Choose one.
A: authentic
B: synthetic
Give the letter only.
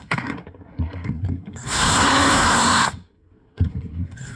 B